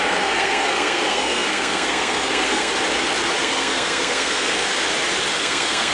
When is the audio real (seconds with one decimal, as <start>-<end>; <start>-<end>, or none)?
2.7-3.4; 4.7-5.3